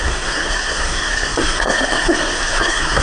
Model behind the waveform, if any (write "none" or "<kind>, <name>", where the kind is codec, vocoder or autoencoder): codec, SNAC